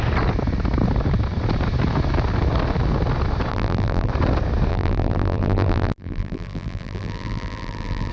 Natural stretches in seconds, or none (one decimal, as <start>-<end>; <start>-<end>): 0.0-3.5; 4.1-4.7